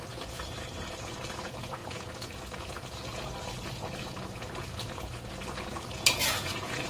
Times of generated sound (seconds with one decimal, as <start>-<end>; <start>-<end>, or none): 0.0-6.9